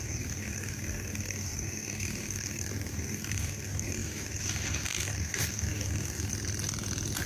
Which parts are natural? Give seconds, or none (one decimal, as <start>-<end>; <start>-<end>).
6.3-7.3